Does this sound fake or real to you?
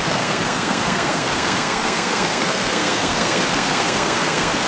fake